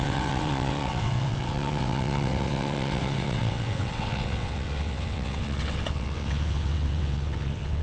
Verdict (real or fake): fake